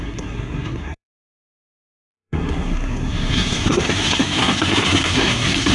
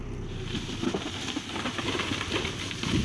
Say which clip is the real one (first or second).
second